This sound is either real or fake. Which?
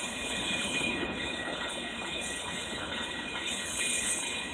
fake